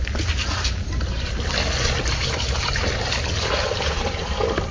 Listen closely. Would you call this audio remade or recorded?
recorded